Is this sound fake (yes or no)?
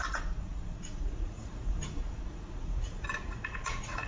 yes